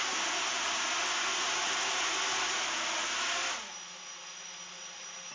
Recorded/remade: recorded